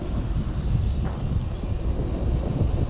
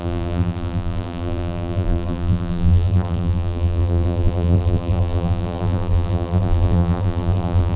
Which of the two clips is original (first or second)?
first